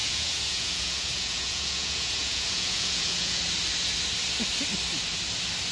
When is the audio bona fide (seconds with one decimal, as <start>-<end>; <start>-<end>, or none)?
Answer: 3.4-5.7